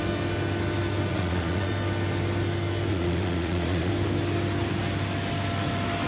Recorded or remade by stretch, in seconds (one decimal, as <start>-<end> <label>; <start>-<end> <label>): 0.0-1.1 recorded; 1.1-1.7 remade; 1.7-2.9 recorded; 2.9-3.9 remade; 3.9-6.1 recorded